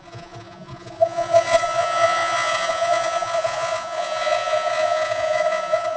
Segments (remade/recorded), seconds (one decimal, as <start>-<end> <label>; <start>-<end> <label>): 0.0-6.0 remade